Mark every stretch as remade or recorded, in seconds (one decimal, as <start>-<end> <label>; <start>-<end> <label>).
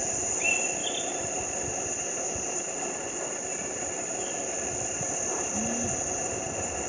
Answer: 0.0-0.8 recorded; 0.8-4.9 remade; 4.9-6.9 recorded